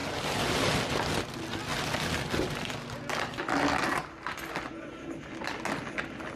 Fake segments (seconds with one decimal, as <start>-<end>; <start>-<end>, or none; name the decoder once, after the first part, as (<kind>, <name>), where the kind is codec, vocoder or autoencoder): none